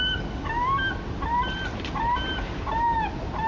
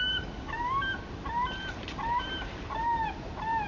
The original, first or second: first